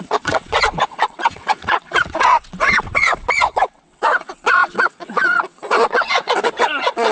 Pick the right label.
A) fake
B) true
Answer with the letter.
A